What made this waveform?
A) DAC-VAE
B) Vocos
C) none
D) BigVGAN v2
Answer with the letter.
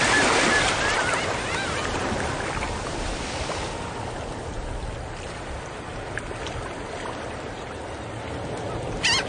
C